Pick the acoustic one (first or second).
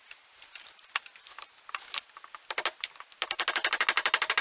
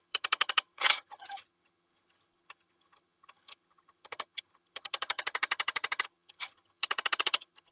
first